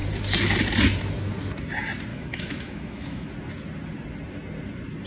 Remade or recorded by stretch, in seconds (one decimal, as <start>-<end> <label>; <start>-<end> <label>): 0.0-2.1 recorded; 2.1-3.3 remade; 3.3-5.1 recorded